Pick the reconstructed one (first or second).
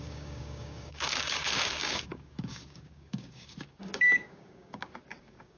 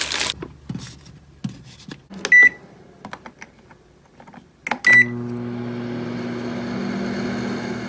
first